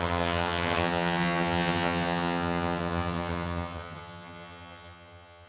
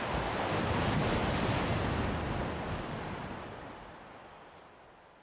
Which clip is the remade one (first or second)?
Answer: first